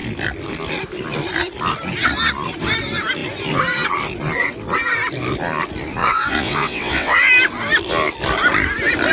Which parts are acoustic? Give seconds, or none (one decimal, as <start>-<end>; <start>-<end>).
0.0-6.0; 7.3-9.1